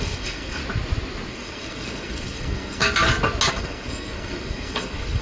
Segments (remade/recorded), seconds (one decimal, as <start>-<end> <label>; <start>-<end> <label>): 0.0-0.6 remade; 0.6-1.3 recorded; 1.3-2.8 remade; 2.8-3.5 recorded; 3.5-5.2 remade